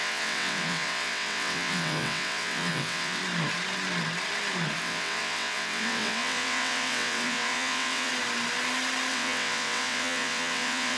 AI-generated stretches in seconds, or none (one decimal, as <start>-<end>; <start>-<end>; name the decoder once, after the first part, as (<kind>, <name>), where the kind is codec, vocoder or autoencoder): 0.0-3.2 (vocoder, WaveNeXt); 4.8-8.1; 9.1-11.0

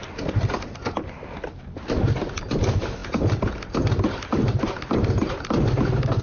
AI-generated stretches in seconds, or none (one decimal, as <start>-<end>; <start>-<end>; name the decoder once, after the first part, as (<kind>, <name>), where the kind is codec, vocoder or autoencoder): none